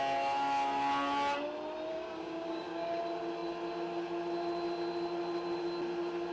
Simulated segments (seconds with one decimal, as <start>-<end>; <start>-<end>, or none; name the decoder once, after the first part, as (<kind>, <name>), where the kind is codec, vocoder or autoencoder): 1.9-3.0 (codec, DAC)